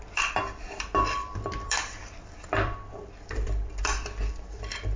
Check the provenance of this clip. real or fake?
fake